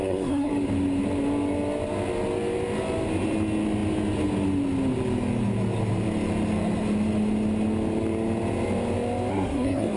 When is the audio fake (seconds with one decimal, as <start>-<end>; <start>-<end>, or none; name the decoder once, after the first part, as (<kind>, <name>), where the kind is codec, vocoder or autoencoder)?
0.0-0.5 (codec, SNAC); 9.3-10.0